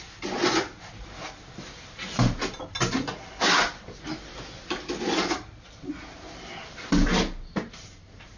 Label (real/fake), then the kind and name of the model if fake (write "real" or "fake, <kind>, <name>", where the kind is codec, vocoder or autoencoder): real